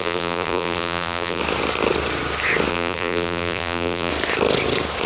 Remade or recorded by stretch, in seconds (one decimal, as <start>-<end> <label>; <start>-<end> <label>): 0.0-1.4 remade; 1.4-2.7 recorded; 2.7-4.1 remade; 4.1-5.1 recorded

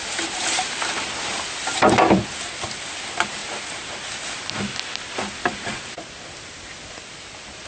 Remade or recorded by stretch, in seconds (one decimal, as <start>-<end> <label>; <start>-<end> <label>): 0.0-1.3 remade; 1.3-2.1 recorded; 2.1-7.7 remade

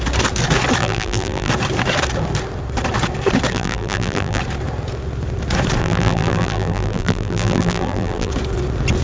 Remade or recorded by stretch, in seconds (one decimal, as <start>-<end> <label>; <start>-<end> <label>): 0.0-0.8 recorded; 0.8-1.5 remade; 1.5-3.5 recorded; 3.5-4.4 remade; 4.4-5.8 recorded; 5.8-8.3 remade; 8.3-9.0 recorded

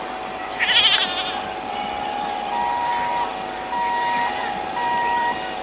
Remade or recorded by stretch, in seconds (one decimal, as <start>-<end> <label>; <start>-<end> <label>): 0.0-0.4 recorded; 0.4-2.9 remade; 2.9-3.3 recorded; 3.3-5.6 remade

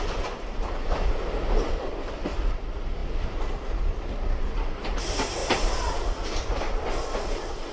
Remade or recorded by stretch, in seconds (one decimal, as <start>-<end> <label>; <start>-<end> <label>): 0.0-7.7 recorded

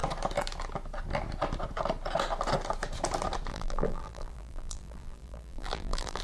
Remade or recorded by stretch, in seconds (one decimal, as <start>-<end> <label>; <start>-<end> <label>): 0.0-3.5 recorded; 3.5-6.2 remade

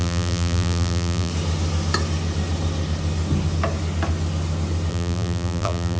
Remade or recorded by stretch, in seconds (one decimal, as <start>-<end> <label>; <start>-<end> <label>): 0.0-1.3 remade; 1.3-4.9 recorded; 4.9-6.0 remade

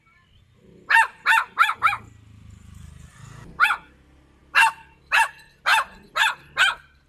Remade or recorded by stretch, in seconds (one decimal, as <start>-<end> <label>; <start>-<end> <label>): 0.0-7.1 recorded